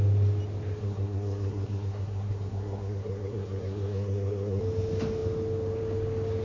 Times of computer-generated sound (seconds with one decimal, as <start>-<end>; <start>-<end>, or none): 0.8-4.6